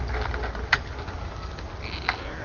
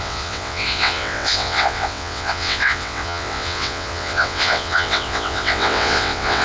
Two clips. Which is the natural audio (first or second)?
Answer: first